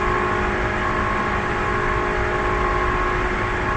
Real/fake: real